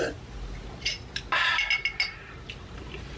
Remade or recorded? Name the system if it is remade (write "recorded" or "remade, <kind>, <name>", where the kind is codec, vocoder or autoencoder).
recorded